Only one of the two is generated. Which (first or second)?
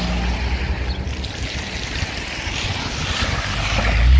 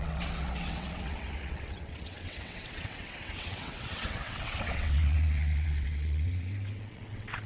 second